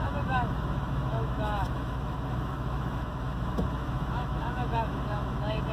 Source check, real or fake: fake